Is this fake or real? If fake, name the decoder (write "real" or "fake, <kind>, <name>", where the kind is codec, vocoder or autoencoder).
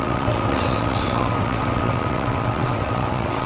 fake, vocoder, WaveNeXt